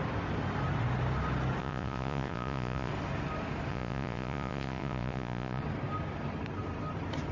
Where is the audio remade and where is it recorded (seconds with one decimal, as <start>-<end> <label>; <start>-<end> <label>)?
0.0-1.6 recorded; 1.6-2.9 remade; 2.9-3.7 recorded; 3.7-5.6 remade; 5.6-7.3 recorded